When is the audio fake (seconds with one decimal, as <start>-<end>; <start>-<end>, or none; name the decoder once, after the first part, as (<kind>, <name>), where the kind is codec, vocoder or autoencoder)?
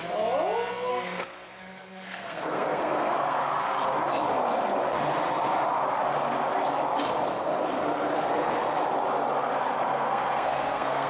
0.9-3.4 (codec, SNAC); 9.9-11.1